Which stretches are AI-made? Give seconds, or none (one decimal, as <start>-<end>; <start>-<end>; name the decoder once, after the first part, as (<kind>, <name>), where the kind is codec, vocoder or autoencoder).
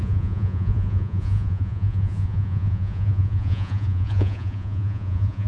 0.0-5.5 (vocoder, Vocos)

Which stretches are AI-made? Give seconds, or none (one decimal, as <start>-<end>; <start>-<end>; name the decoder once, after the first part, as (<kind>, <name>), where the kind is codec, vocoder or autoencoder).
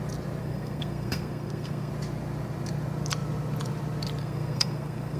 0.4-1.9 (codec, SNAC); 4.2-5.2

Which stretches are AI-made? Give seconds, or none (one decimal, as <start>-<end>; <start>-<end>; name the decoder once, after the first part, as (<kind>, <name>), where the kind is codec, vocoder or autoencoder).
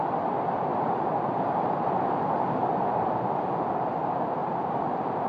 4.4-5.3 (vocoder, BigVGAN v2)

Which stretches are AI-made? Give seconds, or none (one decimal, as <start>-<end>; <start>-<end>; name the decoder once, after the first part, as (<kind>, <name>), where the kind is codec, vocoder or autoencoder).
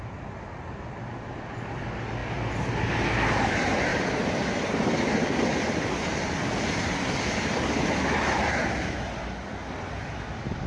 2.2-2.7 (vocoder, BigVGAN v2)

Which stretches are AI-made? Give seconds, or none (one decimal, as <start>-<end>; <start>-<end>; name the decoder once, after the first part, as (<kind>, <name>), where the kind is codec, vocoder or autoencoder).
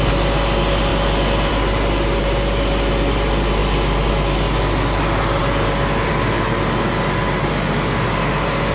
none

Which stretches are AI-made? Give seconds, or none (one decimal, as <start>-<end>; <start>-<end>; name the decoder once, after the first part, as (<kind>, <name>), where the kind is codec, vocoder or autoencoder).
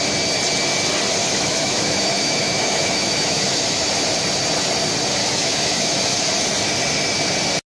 1.2-3.9 (autoencoder, DAC-VAE); 5.2-6.3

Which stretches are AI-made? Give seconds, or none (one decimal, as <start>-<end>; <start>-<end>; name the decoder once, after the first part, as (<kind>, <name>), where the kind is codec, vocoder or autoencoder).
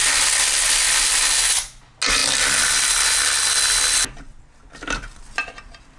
none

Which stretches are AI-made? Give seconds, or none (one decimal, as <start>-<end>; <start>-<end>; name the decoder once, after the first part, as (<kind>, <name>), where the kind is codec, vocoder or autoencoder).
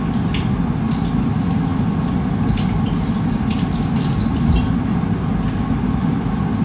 none